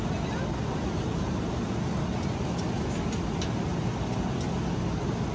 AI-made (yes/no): no